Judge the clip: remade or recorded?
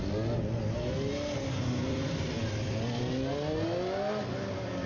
recorded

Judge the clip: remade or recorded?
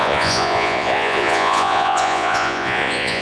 remade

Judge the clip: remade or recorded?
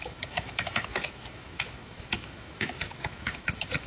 remade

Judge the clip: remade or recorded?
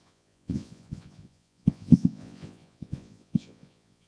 remade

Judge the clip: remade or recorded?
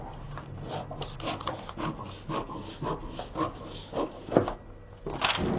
recorded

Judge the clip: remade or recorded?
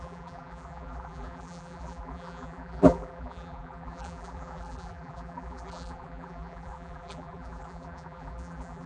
remade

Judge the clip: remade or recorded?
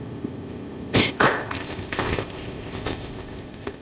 remade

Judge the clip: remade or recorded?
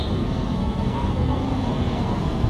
remade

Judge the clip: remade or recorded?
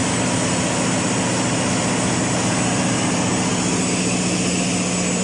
recorded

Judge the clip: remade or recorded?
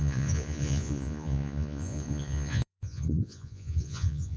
remade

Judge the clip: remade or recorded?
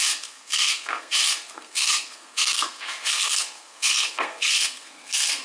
remade